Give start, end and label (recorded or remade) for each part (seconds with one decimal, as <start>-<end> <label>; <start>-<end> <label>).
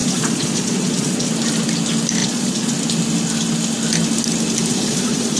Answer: 0.0-1.3 remade; 1.3-2.2 recorded; 2.2-2.7 remade; 2.7-4.7 recorded; 4.7-5.4 remade